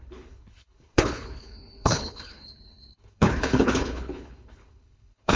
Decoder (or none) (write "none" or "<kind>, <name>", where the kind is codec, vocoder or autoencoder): codec, HILCodec